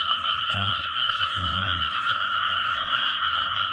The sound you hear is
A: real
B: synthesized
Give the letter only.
B